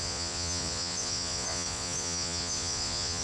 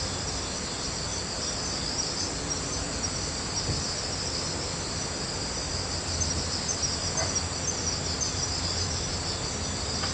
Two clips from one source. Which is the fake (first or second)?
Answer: first